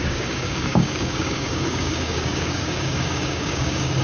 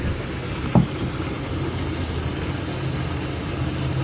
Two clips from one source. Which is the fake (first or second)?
first